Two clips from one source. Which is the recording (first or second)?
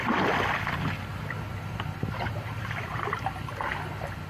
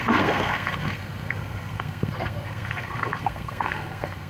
first